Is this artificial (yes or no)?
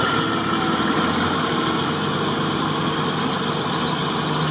no